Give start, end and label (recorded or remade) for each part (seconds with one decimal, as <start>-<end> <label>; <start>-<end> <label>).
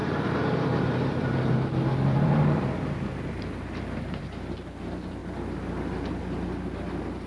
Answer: 0.0-4.2 remade; 4.2-7.3 recorded